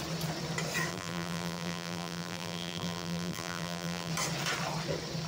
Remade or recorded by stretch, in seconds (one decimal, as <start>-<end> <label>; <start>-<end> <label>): 0.0-0.9 recorded; 0.9-4.1 remade; 4.1-5.3 recorded